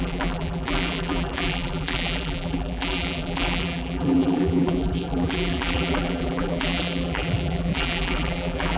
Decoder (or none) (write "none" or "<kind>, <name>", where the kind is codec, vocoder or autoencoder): vocoder, BigVGAN v2